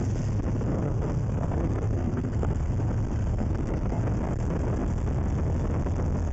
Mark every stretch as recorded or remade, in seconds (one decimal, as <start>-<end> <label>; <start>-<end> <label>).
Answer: 0.0-0.7 recorded; 0.7-2.7 remade; 2.7-3.3 recorded; 3.3-4.0 remade; 4.0-6.3 recorded